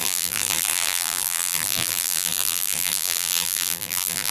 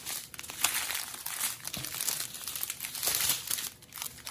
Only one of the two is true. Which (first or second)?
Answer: second